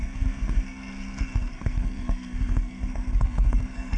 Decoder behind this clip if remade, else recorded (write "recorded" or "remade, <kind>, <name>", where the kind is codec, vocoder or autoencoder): remade, codec, SNAC